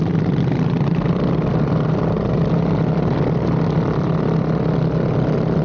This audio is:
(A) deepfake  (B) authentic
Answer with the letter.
B